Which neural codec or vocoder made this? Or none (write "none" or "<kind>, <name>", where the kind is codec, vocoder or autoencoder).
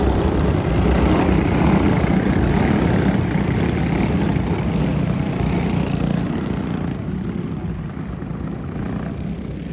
vocoder, BigVGAN v2